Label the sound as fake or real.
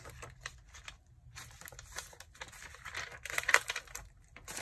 real